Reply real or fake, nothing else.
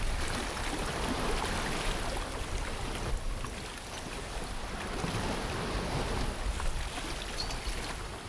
real